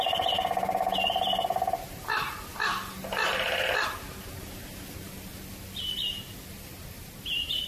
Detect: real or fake real